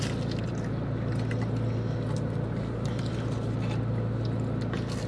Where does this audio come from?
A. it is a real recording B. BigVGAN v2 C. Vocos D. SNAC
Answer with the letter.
A